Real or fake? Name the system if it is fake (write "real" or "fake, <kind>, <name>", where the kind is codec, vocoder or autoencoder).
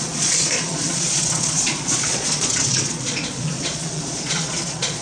fake, vocoder, Vocos